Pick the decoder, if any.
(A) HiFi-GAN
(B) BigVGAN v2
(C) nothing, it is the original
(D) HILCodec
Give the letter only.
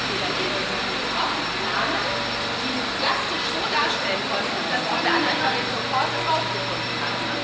C